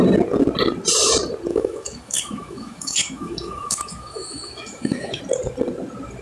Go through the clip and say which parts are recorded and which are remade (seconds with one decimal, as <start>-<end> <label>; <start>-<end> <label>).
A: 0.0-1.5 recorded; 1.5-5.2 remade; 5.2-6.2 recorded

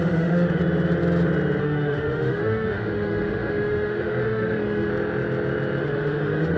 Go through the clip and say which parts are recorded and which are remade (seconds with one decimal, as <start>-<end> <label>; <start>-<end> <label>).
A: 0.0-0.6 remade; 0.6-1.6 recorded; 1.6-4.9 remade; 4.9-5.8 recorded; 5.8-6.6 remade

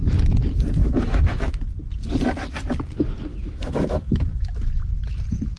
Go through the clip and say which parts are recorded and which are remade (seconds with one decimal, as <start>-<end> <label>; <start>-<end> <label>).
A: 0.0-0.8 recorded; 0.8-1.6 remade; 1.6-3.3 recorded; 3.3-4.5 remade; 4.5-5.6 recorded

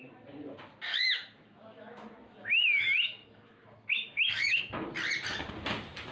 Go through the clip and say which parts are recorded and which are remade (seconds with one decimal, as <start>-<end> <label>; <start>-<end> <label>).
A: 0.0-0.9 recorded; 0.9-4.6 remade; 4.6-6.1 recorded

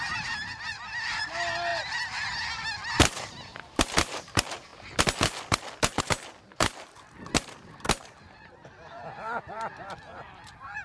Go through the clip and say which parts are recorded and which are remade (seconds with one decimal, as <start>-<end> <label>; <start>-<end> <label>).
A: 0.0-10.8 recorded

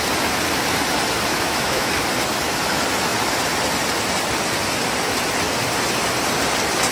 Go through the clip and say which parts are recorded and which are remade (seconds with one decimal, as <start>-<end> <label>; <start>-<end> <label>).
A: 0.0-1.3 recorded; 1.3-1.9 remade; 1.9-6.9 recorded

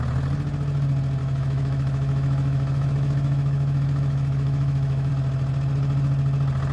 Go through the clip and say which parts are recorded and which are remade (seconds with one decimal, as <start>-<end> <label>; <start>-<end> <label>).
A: 0.0-1.2 recorded; 1.2-5.1 remade; 5.1-6.7 recorded

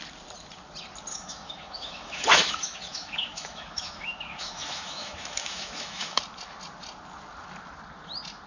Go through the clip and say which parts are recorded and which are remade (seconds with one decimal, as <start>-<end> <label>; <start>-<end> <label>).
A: 0.0-1.1 recorded; 1.1-6.2 remade; 6.2-8.5 recorded